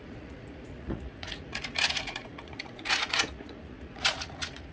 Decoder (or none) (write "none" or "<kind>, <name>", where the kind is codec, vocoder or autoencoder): vocoder, Vocos